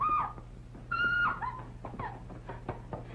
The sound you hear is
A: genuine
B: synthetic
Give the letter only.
A